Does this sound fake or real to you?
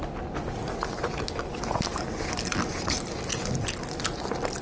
real